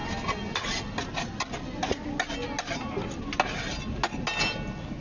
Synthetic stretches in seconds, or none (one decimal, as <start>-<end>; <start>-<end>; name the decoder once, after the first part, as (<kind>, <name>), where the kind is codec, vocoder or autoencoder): none